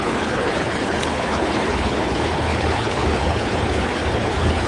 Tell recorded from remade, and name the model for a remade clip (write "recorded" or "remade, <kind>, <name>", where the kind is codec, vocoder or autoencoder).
remade, codec, HILCodec